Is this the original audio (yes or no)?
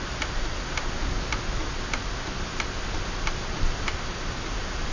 yes